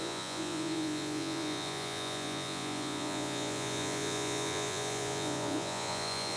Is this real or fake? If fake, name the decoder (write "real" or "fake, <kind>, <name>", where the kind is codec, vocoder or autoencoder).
fake, vocoder, Vocos